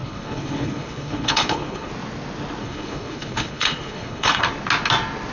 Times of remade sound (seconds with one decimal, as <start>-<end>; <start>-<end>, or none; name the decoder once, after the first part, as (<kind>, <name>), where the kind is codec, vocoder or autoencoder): 0.0-1.9 (codec, HILCodec); 2.6-4.4